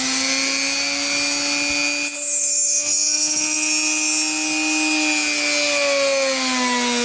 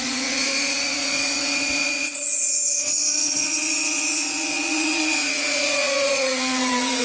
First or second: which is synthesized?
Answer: second